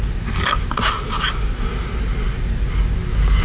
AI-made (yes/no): no